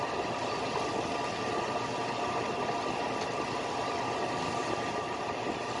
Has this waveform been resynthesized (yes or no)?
no